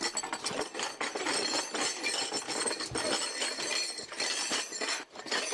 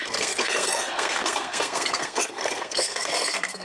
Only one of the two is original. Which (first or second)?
first